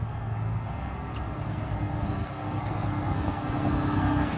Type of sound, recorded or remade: remade